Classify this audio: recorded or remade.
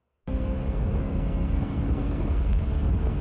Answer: remade